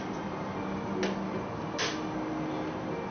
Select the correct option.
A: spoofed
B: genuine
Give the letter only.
B